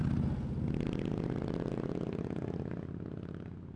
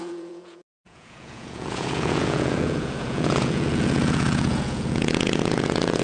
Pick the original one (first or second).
first